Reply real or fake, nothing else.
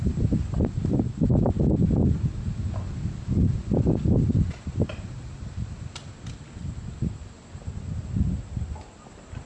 real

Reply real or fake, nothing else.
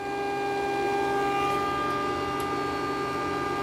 real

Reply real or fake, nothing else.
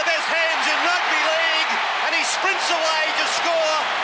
real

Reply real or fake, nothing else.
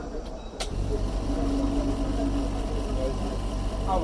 real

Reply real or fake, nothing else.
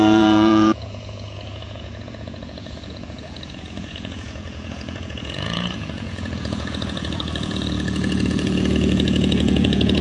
fake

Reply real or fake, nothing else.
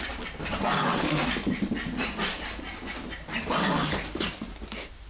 real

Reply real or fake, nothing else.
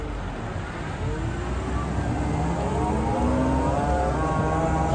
real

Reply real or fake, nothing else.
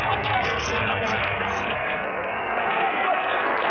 fake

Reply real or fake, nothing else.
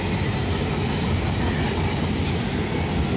real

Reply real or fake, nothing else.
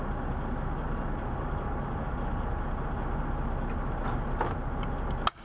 real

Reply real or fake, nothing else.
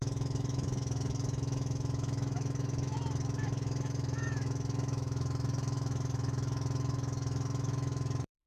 fake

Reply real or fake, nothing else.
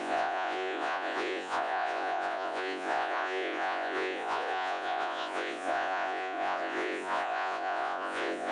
fake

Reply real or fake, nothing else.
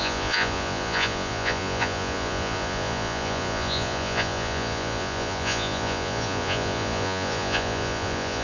fake